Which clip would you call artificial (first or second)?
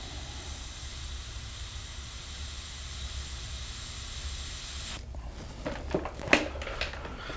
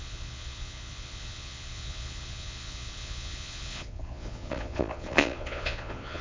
second